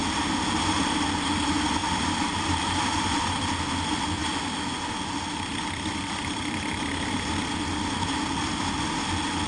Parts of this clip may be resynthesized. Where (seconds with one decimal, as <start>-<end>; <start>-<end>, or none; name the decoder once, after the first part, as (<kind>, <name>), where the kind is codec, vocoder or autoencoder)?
0.0-0.8 (vocoder, BigVGAN v2); 1.8-3.3